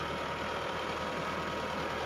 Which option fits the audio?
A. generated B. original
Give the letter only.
B